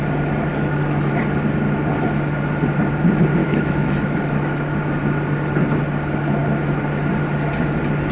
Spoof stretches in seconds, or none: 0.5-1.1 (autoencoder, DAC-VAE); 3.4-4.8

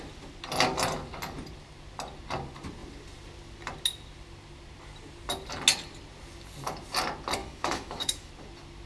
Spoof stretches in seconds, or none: 7.4-8.3 (autoencoder, DAC-VAE)

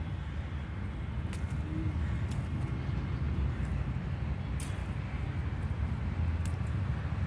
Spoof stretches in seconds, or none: none

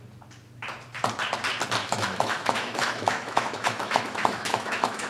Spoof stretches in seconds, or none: 1.8-5.1 (autoencoder, DAC-VAE)

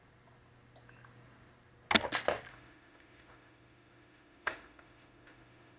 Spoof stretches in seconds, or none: 2.5-5.8 (autoencoder, DAC-VAE)

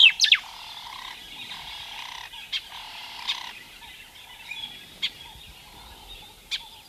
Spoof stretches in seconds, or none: none

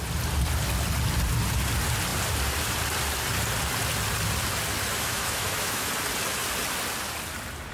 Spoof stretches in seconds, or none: 4.9-5.9 (autoencoder, DAC-VAE)

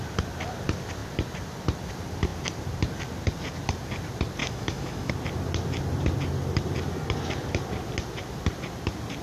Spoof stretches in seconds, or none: 4.4-5.1 (autoencoder, DAC-VAE)